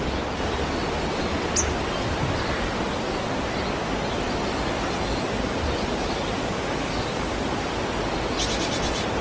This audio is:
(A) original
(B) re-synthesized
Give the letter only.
A